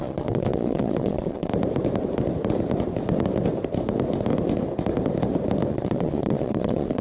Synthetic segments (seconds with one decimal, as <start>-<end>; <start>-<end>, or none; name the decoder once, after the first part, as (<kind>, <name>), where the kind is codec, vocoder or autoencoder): 0.0-1.5 (vocoder, Vocos); 5.7-7.0